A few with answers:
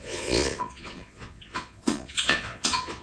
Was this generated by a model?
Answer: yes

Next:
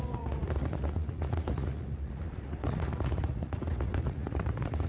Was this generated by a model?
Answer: yes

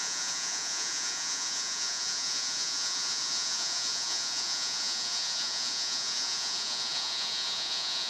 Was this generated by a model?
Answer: yes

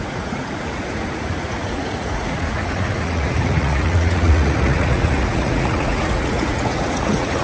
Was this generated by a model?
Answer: yes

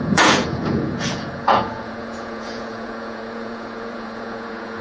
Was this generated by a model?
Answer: yes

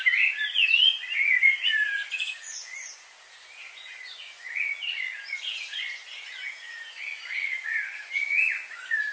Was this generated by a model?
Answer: yes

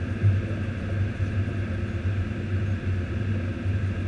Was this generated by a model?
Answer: no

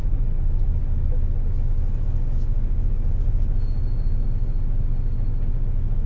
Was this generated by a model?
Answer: no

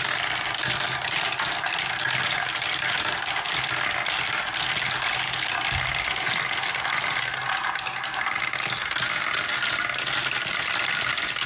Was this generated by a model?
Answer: no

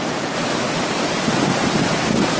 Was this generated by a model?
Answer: no